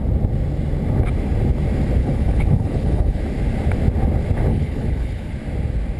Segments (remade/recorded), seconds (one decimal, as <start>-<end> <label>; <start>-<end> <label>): 0.0-2.0 recorded; 2.0-3.2 remade; 3.2-4.5 recorded; 4.5-5.3 remade; 5.3-6.0 recorded